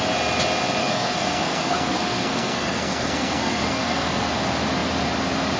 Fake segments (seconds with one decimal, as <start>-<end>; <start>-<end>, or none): 0.8-4.2